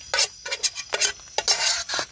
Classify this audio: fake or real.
real